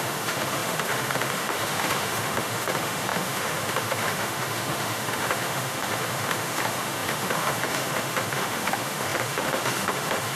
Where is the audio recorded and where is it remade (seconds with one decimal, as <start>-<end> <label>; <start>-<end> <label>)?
0.0-10.3 remade